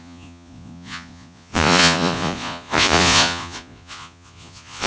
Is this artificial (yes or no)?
yes